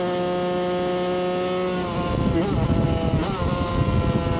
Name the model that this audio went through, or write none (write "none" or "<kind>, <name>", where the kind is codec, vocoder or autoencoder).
none